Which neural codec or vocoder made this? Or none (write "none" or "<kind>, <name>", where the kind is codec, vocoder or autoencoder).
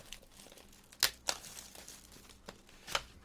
none